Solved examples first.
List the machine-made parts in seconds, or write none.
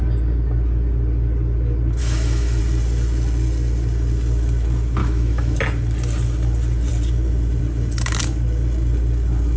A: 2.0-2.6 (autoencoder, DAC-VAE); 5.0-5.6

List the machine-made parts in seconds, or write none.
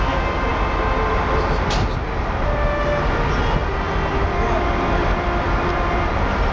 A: none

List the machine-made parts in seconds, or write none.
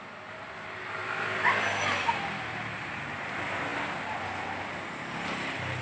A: none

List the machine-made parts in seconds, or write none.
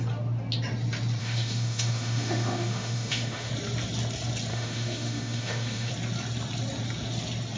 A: 1.2-3.5 (autoencoder, DAC-VAE); 4.5-5.9